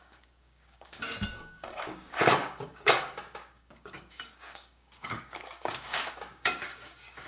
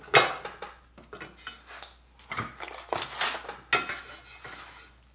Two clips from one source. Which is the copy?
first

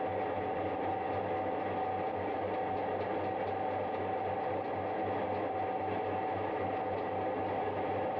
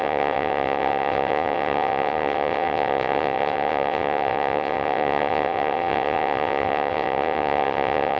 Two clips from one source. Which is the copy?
second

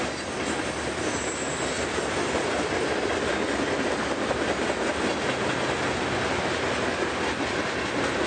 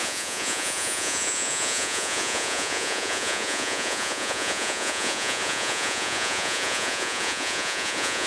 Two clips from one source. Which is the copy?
second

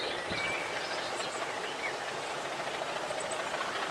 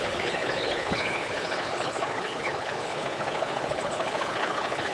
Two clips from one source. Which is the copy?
second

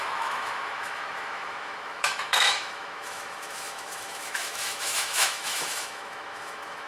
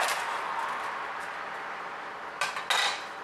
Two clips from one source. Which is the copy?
first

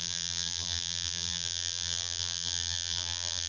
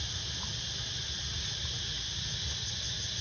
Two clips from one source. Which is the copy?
first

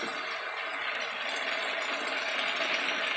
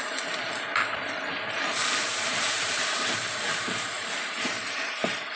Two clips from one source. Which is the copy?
second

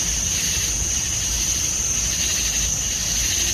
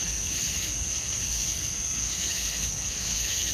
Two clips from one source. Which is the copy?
second